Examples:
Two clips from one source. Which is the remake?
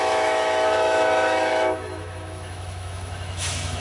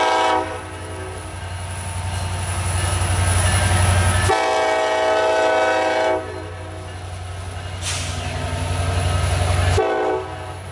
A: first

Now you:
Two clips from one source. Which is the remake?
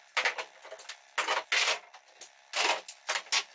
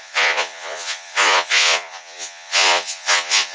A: second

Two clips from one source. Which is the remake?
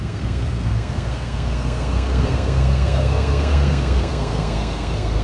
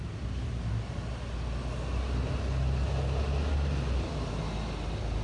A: first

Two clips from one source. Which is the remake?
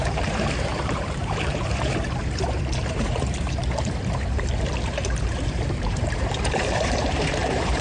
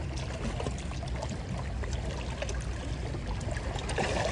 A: first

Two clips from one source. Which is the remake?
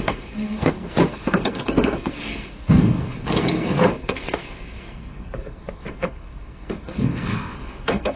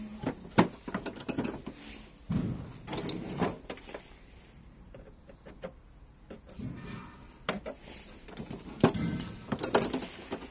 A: first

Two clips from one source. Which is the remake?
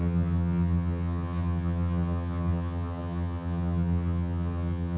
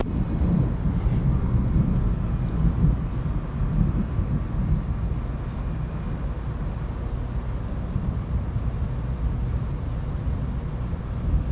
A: first